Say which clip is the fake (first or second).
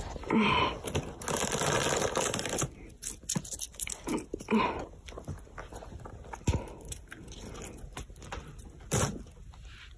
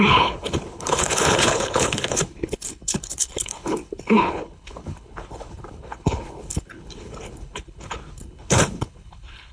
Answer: second